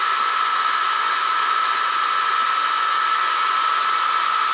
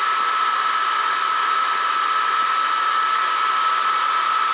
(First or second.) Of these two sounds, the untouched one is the second